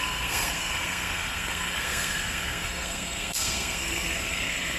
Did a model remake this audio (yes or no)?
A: yes